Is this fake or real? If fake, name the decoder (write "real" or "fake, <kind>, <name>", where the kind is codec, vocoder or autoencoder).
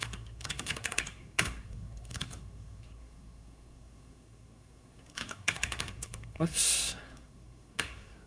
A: fake, codec, SNAC